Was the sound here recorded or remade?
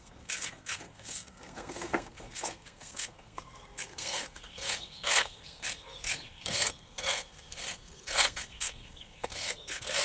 remade